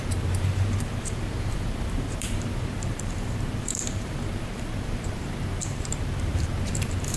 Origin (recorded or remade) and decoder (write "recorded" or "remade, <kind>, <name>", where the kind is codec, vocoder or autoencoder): remade, vocoder, BigVGAN v2